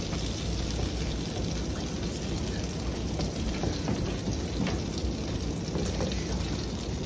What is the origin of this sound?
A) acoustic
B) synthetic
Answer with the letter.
A